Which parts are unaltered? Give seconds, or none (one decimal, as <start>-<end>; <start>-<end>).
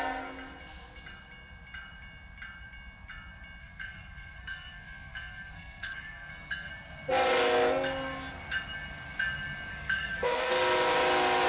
0.0-3.6; 6.7-9.7; 10.5-11.5